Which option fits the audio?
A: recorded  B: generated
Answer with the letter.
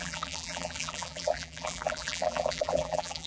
B